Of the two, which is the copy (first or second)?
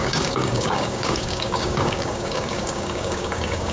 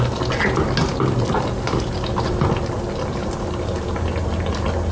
first